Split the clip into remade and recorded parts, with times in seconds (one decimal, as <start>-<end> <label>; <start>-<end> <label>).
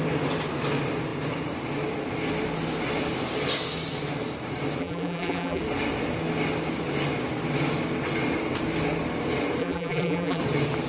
0.0-4.8 recorded; 4.8-5.6 remade; 5.6-9.6 recorded; 9.6-10.4 remade; 10.4-10.9 recorded